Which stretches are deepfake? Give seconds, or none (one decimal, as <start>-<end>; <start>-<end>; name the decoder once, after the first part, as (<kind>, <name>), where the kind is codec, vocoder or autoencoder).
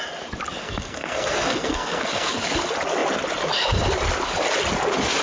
0.6-2.3 (codec, SNAC)